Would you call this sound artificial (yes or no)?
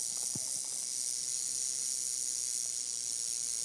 no